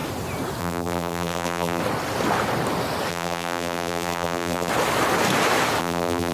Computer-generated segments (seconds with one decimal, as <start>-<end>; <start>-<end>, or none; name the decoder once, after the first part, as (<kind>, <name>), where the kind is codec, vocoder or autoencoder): 0.6-1.8 (vocoder, BigVGAN v2); 3.1-4.7; 5.8-6.3